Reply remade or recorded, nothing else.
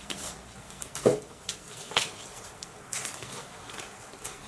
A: remade